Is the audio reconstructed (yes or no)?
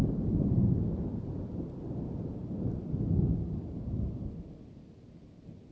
no